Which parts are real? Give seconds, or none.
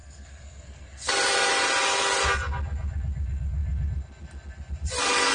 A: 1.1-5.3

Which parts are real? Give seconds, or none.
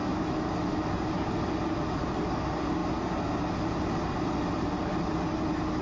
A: 0.9-5.8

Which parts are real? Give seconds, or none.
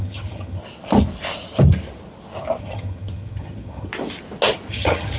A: 0.6-2.6; 3.9-4.7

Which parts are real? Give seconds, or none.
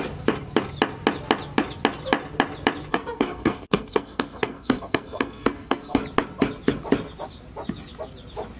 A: 0.0-2.9; 6.0-8.6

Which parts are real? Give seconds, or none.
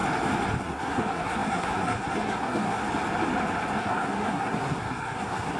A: 0.0-0.6; 2.8-3.8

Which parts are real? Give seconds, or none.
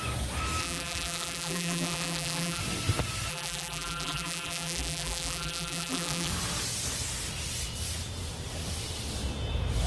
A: 0.0-0.6; 2.6-3.3; 6.3-9.9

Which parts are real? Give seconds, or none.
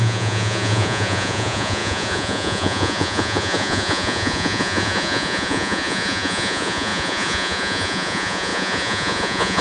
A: none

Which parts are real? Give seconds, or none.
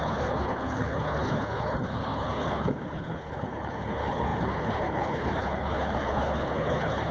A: none